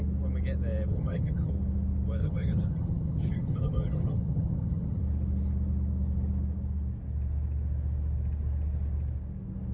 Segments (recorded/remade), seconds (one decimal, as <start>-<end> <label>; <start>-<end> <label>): 0.0-0.9 recorded; 0.9-1.5 remade; 1.5-2.2 recorded; 2.2-5.0 remade; 5.0-9.7 recorded